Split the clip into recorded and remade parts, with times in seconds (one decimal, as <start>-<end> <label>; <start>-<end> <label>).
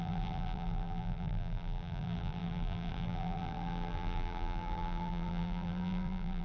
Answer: 0.0-6.4 remade